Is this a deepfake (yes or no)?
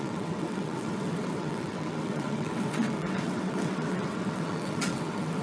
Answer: yes